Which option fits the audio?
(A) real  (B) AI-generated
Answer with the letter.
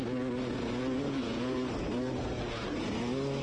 A